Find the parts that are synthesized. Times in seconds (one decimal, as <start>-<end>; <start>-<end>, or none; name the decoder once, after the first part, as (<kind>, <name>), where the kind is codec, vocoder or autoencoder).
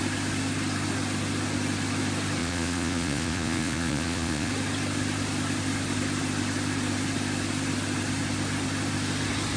2.4-4.5 (vocoder, Vocos)